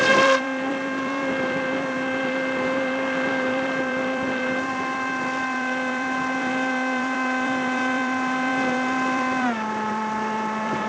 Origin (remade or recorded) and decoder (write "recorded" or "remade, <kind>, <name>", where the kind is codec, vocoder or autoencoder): remade, vocoder, BigVGAN v2